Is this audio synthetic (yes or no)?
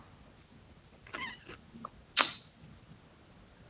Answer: no